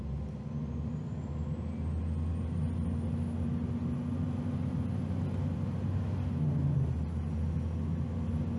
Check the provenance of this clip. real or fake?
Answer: real